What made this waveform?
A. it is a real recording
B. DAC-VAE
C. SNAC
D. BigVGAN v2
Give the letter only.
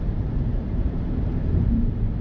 D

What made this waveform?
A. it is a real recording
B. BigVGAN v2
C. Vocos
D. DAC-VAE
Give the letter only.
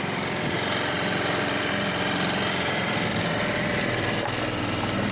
B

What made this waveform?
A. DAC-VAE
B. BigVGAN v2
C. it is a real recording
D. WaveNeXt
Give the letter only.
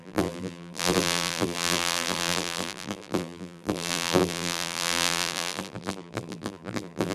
B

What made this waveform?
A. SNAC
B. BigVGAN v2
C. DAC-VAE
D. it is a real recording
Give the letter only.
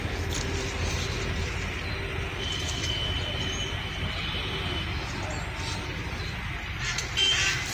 D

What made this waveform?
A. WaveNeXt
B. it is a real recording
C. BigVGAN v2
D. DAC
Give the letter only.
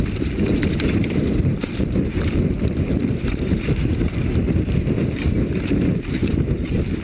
C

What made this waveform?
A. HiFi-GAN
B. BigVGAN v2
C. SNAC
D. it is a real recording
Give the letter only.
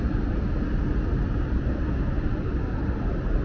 D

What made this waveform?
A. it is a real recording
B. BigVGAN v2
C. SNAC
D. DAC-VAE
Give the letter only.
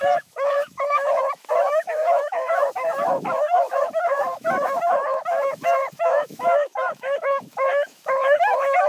D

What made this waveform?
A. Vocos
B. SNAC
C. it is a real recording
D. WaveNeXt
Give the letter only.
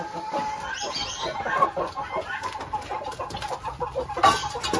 C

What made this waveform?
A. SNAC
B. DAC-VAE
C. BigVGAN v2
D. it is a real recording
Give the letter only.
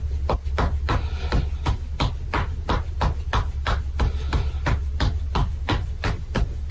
D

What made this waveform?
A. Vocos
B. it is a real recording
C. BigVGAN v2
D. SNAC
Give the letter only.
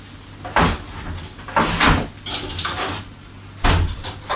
B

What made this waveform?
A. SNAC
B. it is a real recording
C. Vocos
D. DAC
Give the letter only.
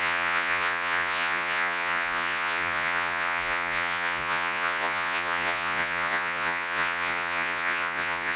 C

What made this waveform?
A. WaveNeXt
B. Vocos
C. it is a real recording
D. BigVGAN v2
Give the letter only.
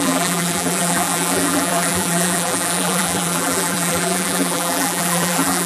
D